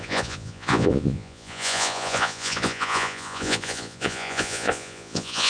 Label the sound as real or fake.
fake